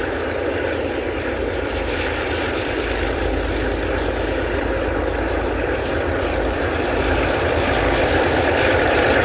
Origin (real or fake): fake